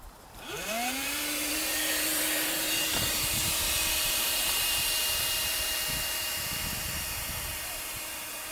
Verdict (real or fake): fake